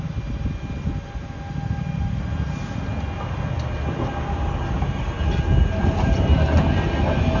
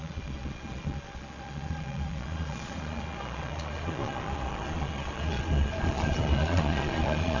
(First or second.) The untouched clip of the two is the first